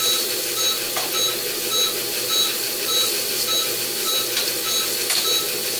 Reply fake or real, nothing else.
real